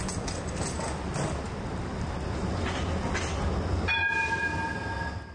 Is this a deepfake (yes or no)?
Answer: no